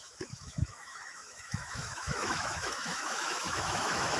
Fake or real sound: fake